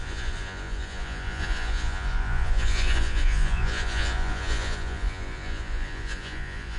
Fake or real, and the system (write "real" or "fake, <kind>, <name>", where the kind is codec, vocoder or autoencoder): fake, vocoder, Vocos